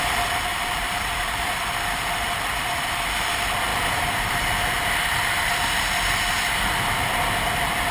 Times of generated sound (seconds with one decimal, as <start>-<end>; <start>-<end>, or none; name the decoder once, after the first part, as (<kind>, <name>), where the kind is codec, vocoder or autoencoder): 0.5-1.4 (vocoder, BigVGAN v2)